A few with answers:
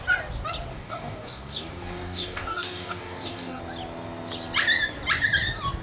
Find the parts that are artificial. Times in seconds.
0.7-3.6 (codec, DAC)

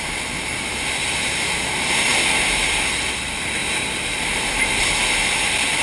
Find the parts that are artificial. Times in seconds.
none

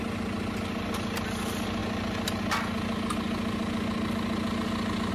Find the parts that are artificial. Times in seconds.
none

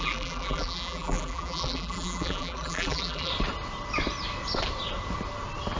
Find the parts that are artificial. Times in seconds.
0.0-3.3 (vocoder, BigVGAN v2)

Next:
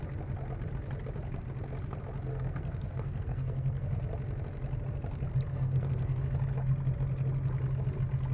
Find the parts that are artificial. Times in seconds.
2.3-4.0 (codec, SNAC); 5.5-6.2

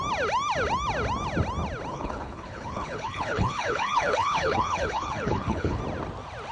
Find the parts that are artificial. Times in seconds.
1.9-5.8 (codec, HILCodec)

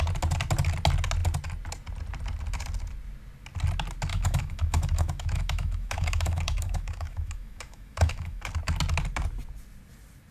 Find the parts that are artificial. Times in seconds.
4.1-8.5 (autoencoder, DAC-VAE)